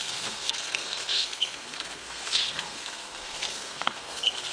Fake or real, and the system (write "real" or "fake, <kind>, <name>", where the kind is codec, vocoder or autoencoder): fake, codec, SNAC